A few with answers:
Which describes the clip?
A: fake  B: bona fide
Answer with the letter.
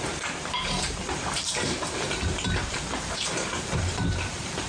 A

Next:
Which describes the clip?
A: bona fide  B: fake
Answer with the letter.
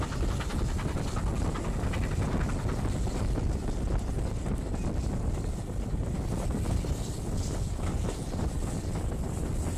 A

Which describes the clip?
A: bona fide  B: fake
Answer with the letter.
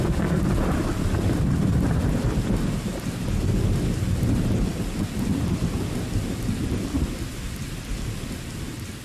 A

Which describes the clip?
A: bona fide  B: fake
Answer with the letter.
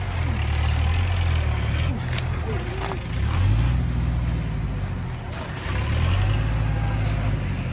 A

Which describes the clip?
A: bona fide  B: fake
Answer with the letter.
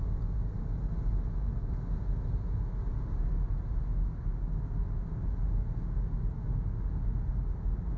A